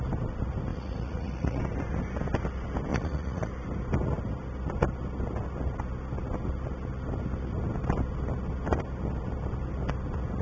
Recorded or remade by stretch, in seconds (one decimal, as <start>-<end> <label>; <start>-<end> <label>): 0.0-0.7 recorded; 0.7-1.6 remade; 1.6-2.9 recorded; 2.9-3.5 remade; 3.5-10.4 recorded